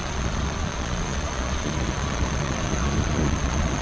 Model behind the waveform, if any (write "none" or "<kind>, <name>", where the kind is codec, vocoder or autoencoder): vocoder, Vocos